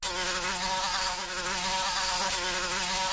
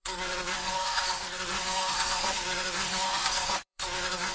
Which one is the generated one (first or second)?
second